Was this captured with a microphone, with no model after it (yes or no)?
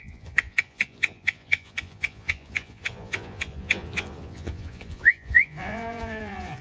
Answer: no